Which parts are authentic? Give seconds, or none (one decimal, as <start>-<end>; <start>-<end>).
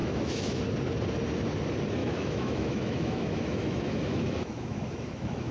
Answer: 0.6-2.0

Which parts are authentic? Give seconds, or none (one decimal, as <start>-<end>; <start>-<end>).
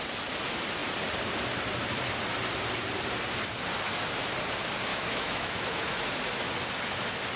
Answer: 0.0-4.9; 6.1-7.4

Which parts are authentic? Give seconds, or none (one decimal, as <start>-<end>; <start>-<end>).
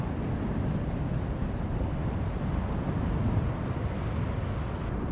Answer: 0.0-5.1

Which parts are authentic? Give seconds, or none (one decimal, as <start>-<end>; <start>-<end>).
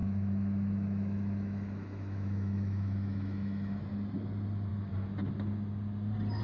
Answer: 3.8-6.4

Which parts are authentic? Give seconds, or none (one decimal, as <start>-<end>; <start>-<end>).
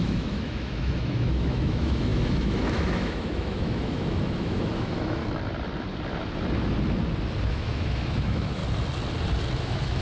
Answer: 5.2-7.5; 8.6-9.6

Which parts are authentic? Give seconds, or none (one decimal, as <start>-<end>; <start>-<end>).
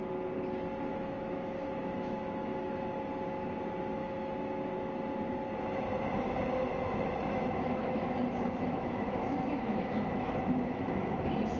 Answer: 0.0-0.9; 2.7-4.0; 4.7-6.7; 11.2-11.6